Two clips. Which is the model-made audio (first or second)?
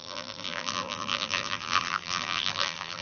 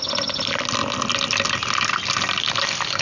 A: first